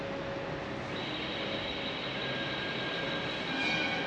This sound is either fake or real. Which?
real